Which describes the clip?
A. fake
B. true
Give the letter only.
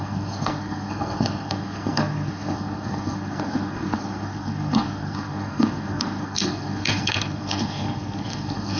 A